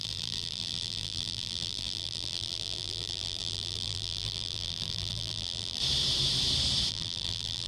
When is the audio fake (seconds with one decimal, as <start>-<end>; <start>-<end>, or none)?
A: 0.0-5.8; 6.9-7.7